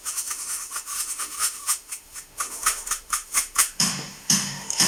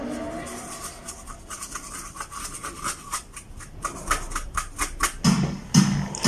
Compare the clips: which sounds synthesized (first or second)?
first